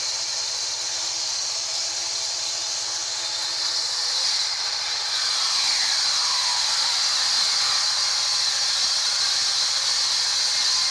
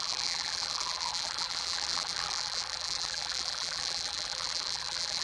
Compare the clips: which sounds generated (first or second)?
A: second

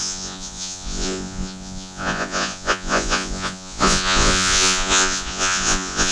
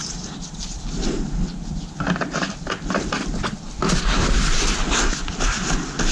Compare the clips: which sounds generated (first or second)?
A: first